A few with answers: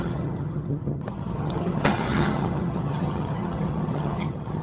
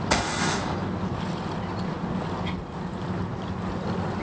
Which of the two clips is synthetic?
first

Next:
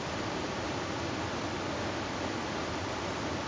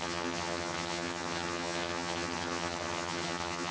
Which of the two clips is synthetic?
second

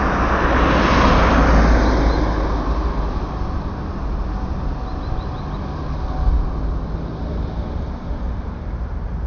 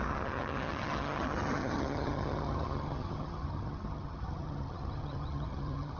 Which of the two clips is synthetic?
second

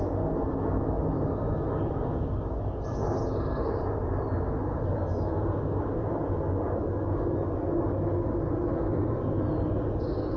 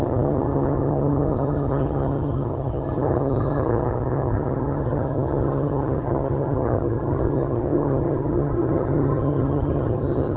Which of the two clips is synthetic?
second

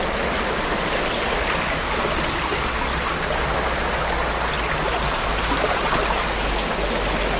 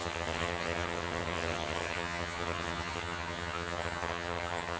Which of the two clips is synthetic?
second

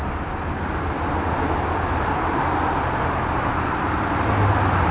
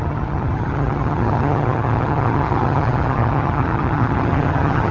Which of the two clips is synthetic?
second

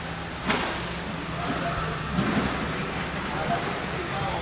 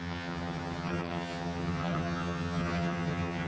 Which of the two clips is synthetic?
second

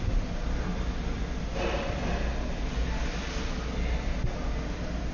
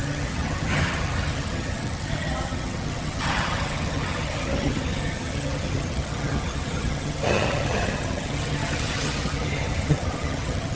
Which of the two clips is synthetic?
second